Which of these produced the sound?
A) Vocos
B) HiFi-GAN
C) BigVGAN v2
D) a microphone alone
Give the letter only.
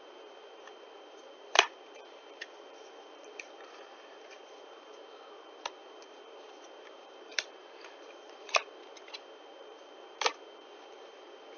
C